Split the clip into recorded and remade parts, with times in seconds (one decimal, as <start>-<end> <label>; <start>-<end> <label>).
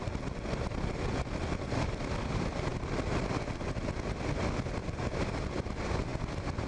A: 0.0-6.7 recorded